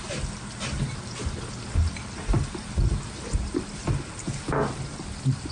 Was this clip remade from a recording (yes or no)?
no